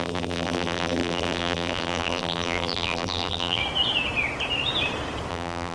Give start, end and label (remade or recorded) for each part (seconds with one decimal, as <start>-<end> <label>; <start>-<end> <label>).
0.0-3.6 remade; 3.6-5.3 recorded; 5.3-5.7 remade